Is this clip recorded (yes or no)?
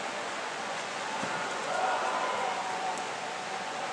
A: no